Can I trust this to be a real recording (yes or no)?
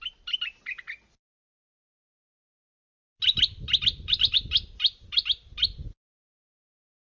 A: yes